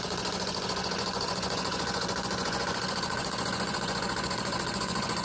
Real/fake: fake